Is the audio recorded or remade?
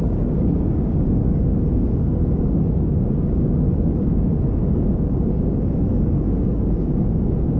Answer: remade